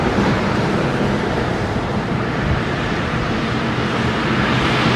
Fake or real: fake